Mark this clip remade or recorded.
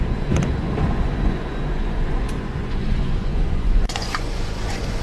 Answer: remade